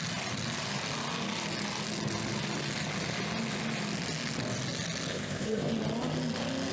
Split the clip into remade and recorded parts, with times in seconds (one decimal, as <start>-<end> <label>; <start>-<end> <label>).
0.0-5.1 recorded; 5.1-5.7 remade; 5.7-6.7 recorded

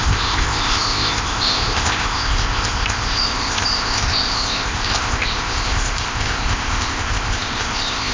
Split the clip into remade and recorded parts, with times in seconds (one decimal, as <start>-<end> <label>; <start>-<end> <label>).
0.0-8.1 remade

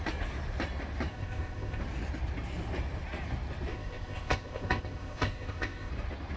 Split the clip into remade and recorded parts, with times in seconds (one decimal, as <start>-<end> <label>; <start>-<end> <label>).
0.0-1.1 recorded; 1.1-1.8 remade; 1.8-3.7 recorded; 3.7-5.9 remade; 5.9-6.4 recorded

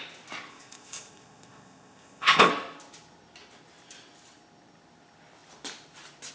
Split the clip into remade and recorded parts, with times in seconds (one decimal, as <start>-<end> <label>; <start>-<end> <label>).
0.0-0.5 recorded; 0.5-2.5 remade; 2.5-6.3 recorded